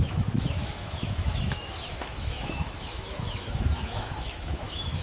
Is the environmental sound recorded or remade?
remade